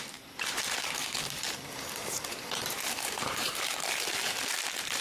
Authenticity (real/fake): fake